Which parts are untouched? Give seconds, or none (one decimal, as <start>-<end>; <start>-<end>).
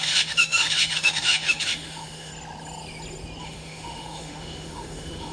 2.3-3.4